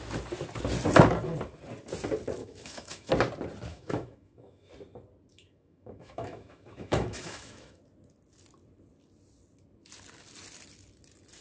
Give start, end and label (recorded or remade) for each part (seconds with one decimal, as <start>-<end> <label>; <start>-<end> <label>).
0.0-2.4 recorded; 2.4-3.1 remade; 3.1-3.7 recorded; 3.7-4.7 remade; 4.7-5.3 recorded; 5.3-7.8 remade; 7.8-11.4 recorded